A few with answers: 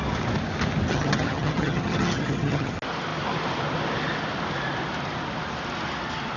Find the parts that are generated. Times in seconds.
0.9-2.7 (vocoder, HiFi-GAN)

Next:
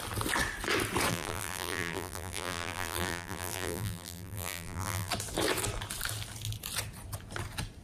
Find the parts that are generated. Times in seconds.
1.1-5.1 (vocoder, BigVGAN v2)